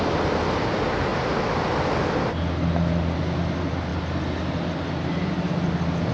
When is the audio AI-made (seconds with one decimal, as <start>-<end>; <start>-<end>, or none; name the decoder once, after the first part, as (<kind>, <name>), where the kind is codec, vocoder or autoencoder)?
none